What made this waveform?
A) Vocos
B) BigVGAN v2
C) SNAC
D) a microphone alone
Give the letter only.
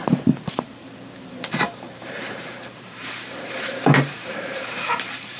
B